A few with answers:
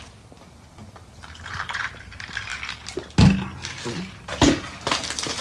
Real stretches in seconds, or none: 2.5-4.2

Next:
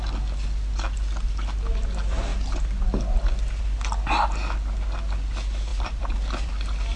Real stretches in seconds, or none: 0.0-5.7; 6.5-7.0

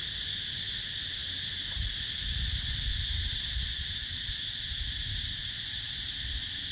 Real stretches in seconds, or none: 0.0-1.2; 4.5-6.7

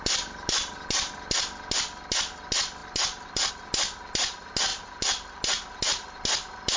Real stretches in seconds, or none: 0.0-6.8

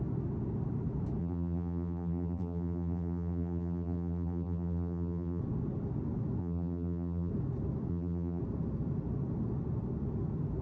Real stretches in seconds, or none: 0.0-1.2; 5.4-6.4; 7.3-7.9; 8.4-10.6

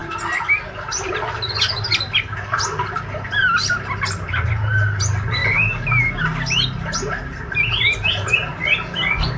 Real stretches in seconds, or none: 0.0-9.4

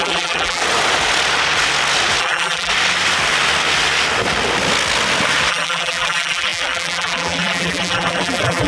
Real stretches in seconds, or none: 0.6-2.2; 2.7-5.5

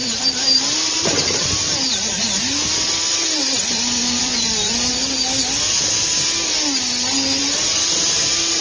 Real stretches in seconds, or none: 2.1-4.2; 4.9-7.4